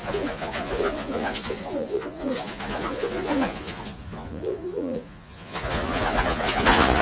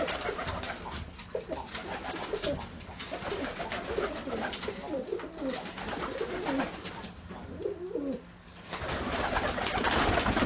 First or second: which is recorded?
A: second